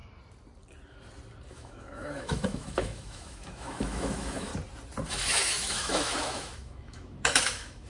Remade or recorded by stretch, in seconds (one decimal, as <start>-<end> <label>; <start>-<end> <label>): 0.0-1.5 recorded; 1.5-4.5 remade; 4.5-5.1 recorded; 5.1-7.9 remade